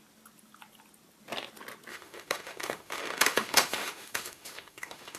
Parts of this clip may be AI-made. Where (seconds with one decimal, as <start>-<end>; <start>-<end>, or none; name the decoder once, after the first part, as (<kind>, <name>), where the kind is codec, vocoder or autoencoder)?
1.9-5.2 (autoencoder, DAC-VAE)